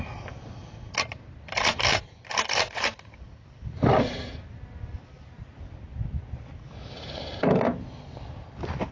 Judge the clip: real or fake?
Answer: real